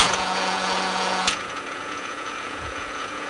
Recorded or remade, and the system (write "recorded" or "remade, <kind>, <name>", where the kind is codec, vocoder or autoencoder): remade, vocoder, Vocos